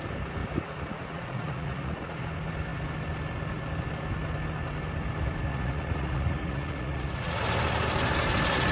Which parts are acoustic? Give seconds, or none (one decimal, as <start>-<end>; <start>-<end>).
0.0-0.4; 2.2-5.5; 7.4-8.7